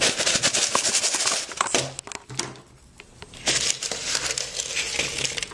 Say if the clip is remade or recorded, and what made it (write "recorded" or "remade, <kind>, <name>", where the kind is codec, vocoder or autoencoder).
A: recorded